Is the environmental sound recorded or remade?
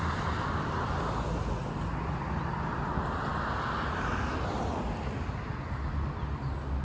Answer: recorded